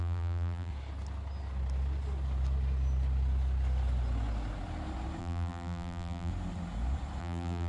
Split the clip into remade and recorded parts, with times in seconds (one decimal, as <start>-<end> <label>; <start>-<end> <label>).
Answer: 0.0-0.7 remade; 0.7-5.2 recorded; 5.2-6.3 remade; 6.3-7.2 recorded; 7.2-7.7 remade